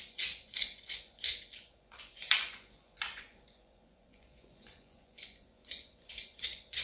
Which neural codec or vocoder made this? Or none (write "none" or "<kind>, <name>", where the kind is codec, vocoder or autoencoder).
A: vocoder, Vocos